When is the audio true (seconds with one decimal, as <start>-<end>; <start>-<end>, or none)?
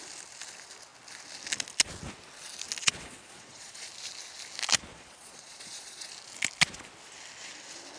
0.0-2.8; 3.9-4.9; 6.1-8.0